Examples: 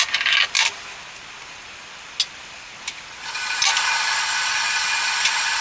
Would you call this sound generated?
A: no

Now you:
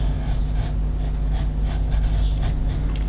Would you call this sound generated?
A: no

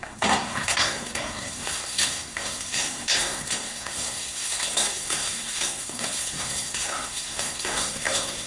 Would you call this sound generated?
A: yes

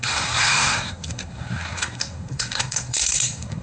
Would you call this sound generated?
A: yes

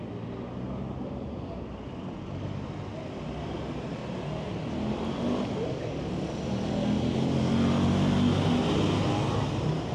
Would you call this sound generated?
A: no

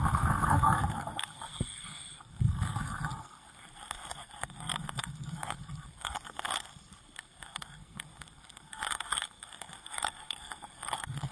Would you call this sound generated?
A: yes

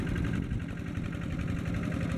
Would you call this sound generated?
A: no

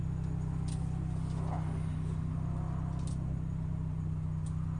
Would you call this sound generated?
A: no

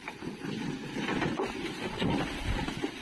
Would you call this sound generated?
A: no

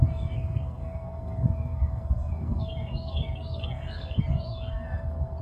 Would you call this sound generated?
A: yes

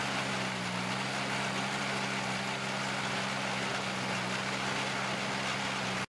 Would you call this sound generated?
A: no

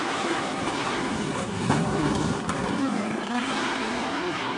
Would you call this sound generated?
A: yes